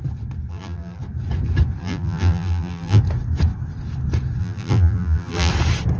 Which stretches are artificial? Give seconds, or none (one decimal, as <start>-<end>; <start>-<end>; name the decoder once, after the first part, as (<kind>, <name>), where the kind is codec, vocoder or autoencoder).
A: 0.5-1.0 (vocoder, BigVGAN v2); 1.8-3.0; 4.4-5.5